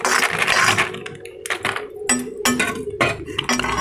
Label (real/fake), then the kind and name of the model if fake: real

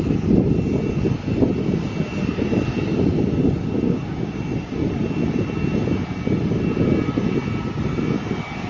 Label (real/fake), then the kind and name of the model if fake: real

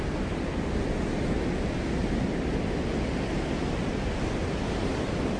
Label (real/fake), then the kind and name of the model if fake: real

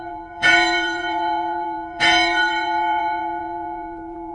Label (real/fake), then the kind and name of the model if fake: fake, vocoder, Vocos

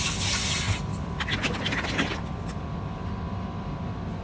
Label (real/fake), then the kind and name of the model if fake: real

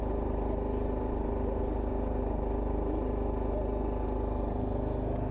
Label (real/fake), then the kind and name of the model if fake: real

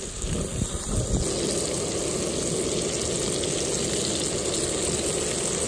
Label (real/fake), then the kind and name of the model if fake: real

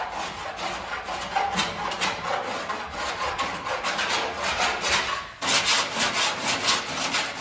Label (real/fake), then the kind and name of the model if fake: real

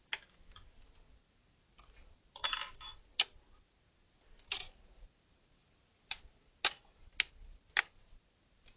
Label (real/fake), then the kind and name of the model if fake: real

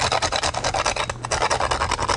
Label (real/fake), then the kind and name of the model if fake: real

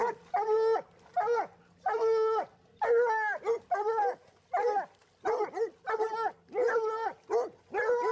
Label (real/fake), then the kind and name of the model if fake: real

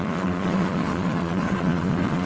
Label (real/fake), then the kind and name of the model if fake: fake, vocoder, Vocos